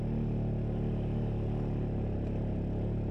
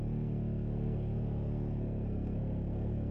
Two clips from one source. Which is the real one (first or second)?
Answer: first